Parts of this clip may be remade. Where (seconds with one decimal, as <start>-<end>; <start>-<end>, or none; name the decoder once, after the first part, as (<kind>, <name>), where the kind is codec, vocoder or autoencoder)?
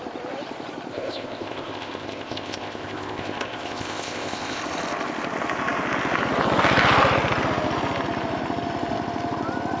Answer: 0.9-4.6 (codec, ZipCodec)